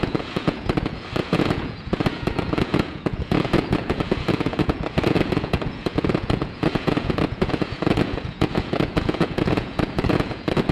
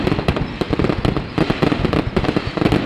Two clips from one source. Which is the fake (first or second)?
first